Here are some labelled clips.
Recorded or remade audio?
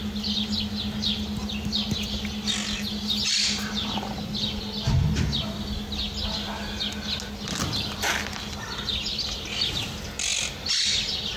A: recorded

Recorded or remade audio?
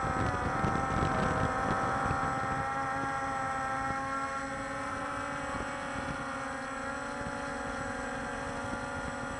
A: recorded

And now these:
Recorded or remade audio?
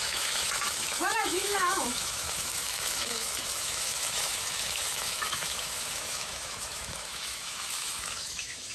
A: remade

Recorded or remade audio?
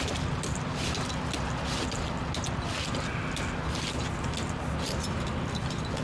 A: recorded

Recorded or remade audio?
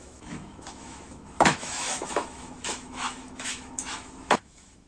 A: remade